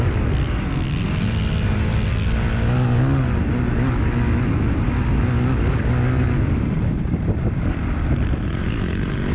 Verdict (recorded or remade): recorded